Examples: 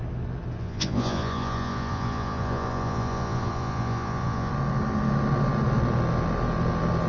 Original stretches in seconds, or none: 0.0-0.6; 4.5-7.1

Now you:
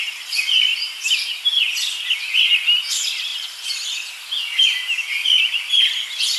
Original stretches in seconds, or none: 0.0-6.4